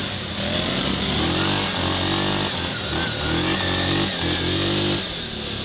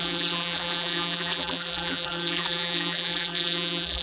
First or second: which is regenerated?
second